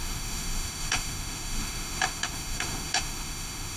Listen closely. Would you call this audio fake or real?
fake